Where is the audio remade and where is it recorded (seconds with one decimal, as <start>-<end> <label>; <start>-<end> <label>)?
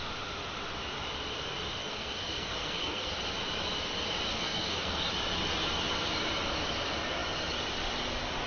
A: 0.0-1.8 recorded; 1.8-3.1 remade; 3.1-4.3 recorded; 4.3-5.0 remade; 5.0-8.5 recorded